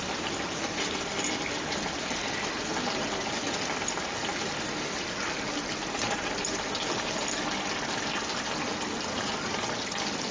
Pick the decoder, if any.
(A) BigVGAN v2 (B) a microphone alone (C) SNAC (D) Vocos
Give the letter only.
B